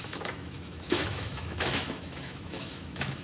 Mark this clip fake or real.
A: fake